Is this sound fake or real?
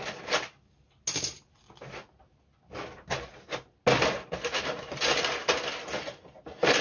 real